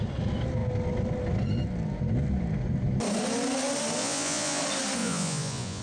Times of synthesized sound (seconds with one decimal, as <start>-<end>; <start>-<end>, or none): 4.0-4.6; 5.0-5.8